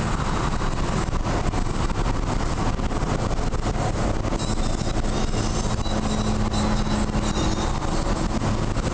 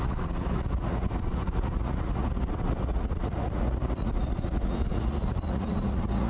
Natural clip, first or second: first